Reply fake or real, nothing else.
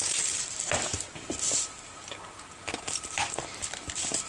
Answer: real